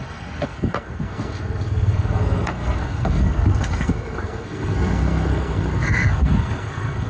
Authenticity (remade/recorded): remade